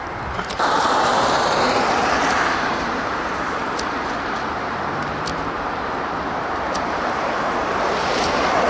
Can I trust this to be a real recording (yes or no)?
no